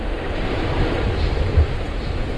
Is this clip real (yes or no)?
yes